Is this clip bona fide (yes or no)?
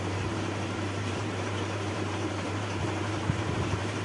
no